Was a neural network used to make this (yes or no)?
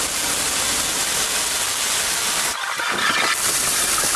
no